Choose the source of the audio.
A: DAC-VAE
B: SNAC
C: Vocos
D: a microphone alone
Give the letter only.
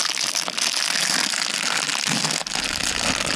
D